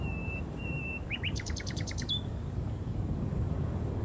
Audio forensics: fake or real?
fake